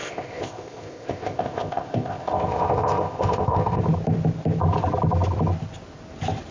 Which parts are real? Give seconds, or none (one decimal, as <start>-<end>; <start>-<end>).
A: 3.8-6.5